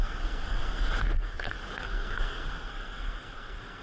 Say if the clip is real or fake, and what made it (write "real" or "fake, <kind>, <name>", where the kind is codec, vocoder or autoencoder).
fake, codec, SNAC